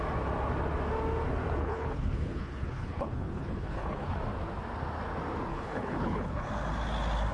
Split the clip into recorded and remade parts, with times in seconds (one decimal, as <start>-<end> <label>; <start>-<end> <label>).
0.0-1.6 recorded; 1.6-4.2 remade; 4.2-5.5 recorded; 5.5-6.5 remade; 6.5-7.3 recorded